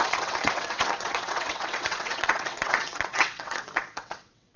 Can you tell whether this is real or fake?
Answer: fake